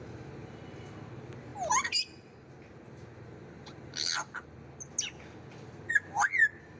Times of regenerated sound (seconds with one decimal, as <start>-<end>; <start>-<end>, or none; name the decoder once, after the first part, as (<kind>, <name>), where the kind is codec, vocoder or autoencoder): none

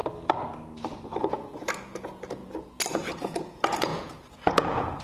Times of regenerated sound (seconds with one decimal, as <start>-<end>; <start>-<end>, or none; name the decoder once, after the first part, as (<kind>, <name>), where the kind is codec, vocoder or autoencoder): 1.2-2.4 (vocoder, Vocos); 3.1-5.0

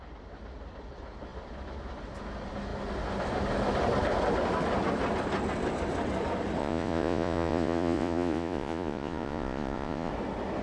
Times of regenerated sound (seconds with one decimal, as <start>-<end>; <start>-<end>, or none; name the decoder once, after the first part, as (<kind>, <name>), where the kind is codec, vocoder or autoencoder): 6.6-10.1 (vocoder, Vocos)